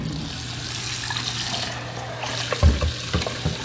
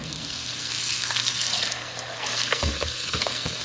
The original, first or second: first